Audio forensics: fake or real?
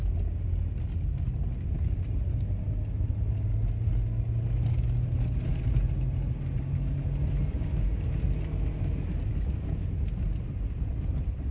real